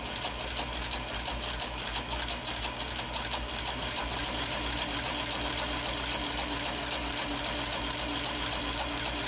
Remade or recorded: recorded